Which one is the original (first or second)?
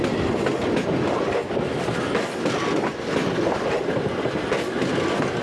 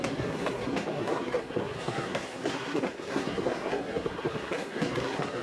first